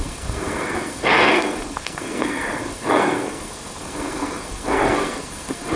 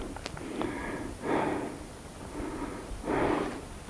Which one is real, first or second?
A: second